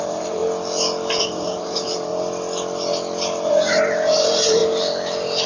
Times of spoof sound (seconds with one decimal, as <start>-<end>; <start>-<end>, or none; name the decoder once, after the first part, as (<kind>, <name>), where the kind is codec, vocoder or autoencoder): 0.0-0.4 (vocoder, BigVGAN v2); 1.2-2.1; 3.5-4.6